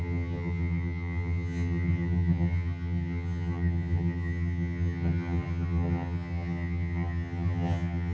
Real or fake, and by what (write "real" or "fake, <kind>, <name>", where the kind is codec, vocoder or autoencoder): fake, vocoder, HiFi-GAN